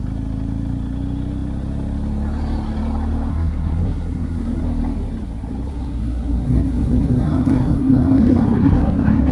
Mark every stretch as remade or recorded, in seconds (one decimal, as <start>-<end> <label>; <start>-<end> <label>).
0.0-3.3 recorded; 3.3-4.6 remade; 4.6-5.7 recorded; 5.7-9.3 remade